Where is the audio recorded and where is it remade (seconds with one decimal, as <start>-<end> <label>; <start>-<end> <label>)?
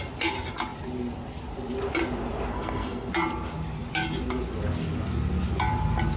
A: 0.0-2.5 recorded; 2.5-3.1 remade; 3.1-6.2 recorded